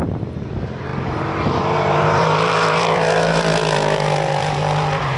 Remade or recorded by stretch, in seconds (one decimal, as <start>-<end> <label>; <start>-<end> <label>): 0.0-5.2 remade